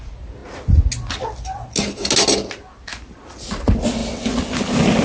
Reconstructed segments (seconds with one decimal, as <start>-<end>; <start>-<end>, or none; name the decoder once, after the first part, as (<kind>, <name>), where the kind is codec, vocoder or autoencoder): none